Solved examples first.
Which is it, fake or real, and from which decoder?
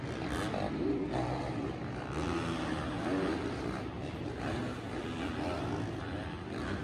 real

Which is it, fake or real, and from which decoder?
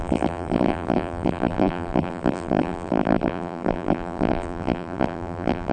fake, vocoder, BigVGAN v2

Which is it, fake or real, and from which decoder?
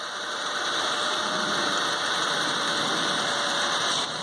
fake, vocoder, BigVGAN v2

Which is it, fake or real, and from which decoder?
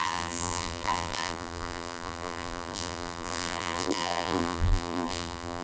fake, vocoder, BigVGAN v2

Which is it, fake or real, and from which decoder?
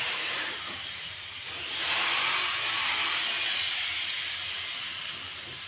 fake, vocoder, BigVGAN v2